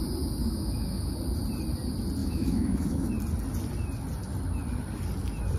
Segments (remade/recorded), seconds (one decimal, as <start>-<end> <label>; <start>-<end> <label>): 0.0-0.4 recorded; 0.4-1.2 remade; 1.2-2.2 recorded; 2.2-3.1 remade; 3.1-5.6 recorded